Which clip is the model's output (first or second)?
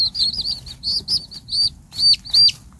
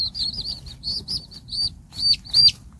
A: second